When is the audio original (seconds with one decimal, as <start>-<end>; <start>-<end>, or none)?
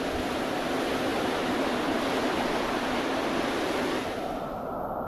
0.0-5.1